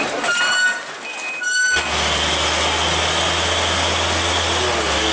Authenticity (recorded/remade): recorded